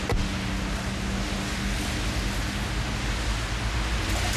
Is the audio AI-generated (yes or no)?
no